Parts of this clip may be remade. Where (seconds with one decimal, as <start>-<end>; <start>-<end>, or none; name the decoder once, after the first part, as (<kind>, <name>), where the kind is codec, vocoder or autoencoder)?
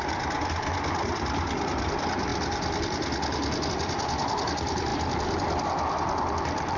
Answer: none